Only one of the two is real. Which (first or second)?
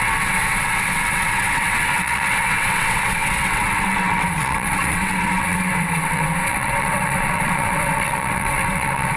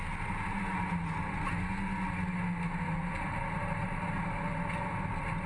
second